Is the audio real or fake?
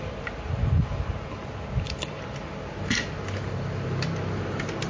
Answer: real